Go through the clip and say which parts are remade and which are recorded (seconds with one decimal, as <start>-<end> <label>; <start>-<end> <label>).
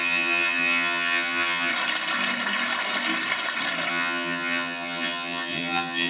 0.0-1.7 remade; 1.7-3.9 recorded; 3.9-6.1 remade